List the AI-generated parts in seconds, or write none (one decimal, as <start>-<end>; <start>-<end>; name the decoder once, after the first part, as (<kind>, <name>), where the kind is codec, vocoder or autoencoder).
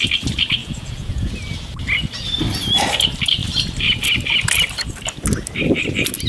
0.6-1.3 (vocoder, Vocos)